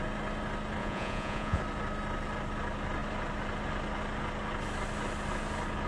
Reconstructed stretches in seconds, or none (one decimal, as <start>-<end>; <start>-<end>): 0.8-1.6

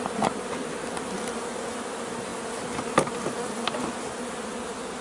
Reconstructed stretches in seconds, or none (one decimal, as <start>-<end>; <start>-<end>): none

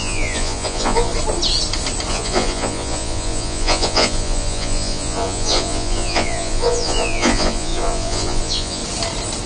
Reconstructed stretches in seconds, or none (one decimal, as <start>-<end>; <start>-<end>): 0.0-1.1; 2.1-8.8

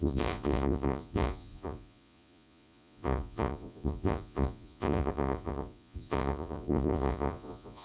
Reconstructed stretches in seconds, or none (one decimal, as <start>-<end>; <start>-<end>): 0.0-7.8